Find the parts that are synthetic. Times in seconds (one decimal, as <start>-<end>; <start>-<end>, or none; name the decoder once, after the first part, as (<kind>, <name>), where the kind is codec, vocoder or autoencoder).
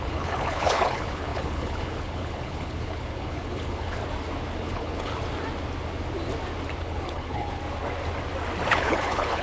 0.0-4.0 (codec, HILCodec); 4.6-5.1; 6.8-7.6; 8.7-9.4